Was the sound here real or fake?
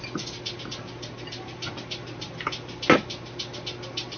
real